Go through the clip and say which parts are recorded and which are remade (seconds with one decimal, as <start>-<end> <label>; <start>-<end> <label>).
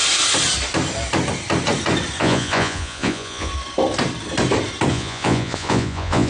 0.0-2.2 recorded; 2.2-3.5 remade; 3.5-4.9 recorded; 4.9-6.3 remade